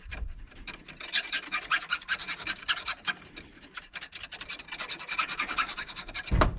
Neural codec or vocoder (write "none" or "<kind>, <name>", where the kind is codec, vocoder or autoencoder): none